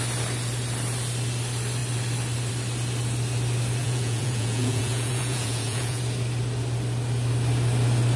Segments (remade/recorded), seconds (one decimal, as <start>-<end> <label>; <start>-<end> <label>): 0.0-3.8 recorded; 3.8-6.0 remade; 6.0-8.2 recorded